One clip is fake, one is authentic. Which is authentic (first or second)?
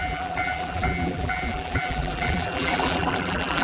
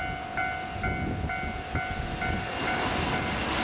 second